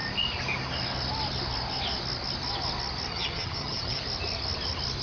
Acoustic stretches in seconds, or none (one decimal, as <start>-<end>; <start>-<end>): 0.0-3.1; 4.0-5.0